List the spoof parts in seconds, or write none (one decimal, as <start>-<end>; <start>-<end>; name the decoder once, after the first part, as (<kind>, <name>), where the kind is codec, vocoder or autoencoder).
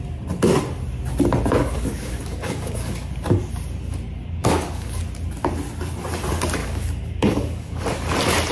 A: 1.6-3.1 (codec, DAC); 4.4-5.0; 6.6-7.8